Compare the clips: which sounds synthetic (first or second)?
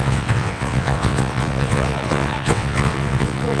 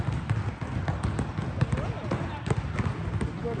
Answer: first